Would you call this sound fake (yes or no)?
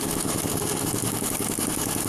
yes